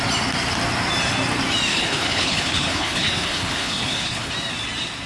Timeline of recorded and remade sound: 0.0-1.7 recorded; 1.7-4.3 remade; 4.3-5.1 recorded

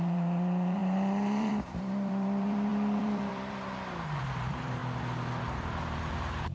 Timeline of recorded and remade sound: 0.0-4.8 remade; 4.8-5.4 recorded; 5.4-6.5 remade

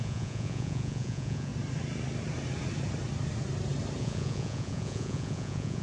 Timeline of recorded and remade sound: 0.0-1.5 remade; 1.5-4.0 recorded; 4.0-5.8 remade

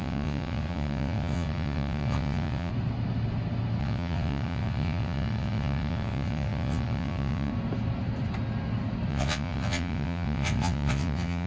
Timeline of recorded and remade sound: 0.0-2.7 remade; 2.7-3.8 recorded; 3.8-7.5 remade; 7.5-9.1 recorded; 9.1-11.5 remade